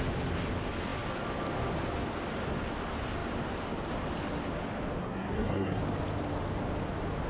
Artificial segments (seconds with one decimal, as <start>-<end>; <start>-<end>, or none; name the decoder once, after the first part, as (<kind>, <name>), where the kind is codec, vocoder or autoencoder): 5.0-5.8 (codec, SNAC)